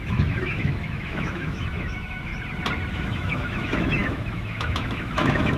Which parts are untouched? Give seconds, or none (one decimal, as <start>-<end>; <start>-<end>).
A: 2.3-2.9